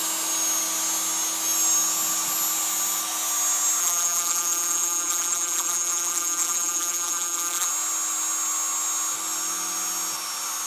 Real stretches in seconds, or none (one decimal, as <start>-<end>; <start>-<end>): 0.0-3.8; 7.7-10.7